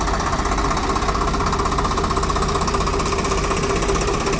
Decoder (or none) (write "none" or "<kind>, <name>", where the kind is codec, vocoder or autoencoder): none